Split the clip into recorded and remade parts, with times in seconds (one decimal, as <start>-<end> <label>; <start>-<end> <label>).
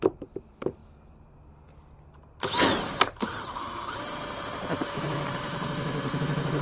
0.0-0.8 remade; 0.8-3.3 recorded; 3.3-6.6 remade